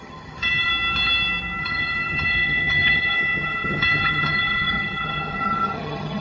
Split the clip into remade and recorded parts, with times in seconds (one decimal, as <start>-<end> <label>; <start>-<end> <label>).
0.0-0.7 remade; 0.7-1.6 recorded; 1.6-6.2 remade